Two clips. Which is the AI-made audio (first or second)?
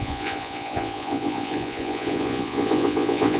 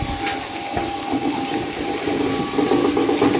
first